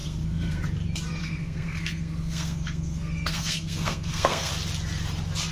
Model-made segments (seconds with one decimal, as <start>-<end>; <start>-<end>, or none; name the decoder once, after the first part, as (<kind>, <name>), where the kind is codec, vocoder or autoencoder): 0.0-0.6 (codec, SNAC); 1.2-4.5